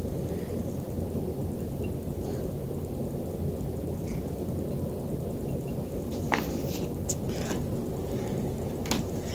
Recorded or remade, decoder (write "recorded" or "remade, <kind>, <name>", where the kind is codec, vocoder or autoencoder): recorded